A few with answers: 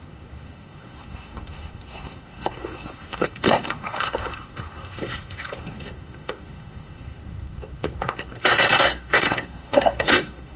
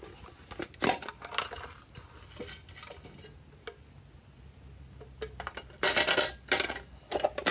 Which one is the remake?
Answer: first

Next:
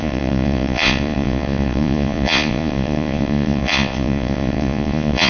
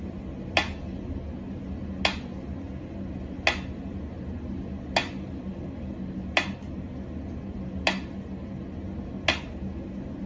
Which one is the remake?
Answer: first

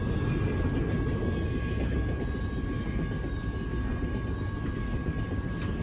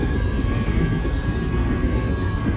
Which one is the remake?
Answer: second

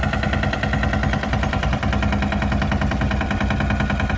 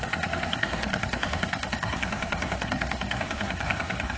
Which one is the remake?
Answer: second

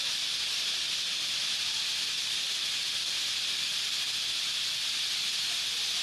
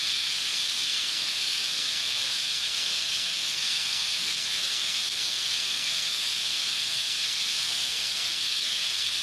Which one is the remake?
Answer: second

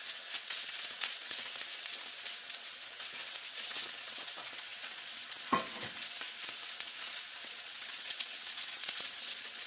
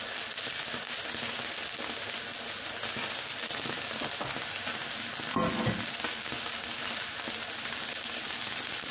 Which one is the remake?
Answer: first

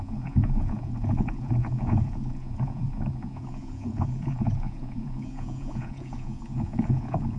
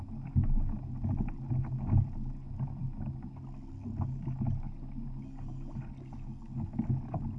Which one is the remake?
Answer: first